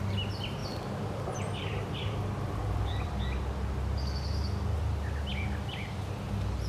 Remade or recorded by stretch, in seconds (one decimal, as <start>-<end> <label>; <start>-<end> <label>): 0.0-0.6 recorded; 0.6-3.2 remade; 3.2-5.3 recorded; 5.3-6.1 remade; 6.1-6.7 recorded